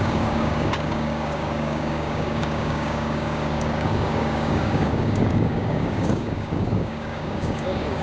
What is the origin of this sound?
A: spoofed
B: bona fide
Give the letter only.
A